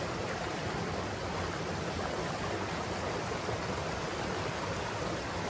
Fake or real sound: fake